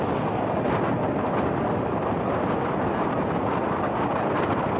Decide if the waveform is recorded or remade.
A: recorded